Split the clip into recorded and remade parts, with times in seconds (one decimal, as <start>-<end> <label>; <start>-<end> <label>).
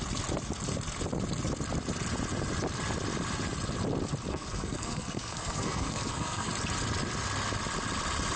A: 0.0-4.3 recorded; 4.3-6.5 remade; 6.5-8.4 recorded